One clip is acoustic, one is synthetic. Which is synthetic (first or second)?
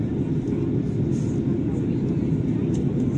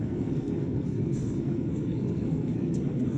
second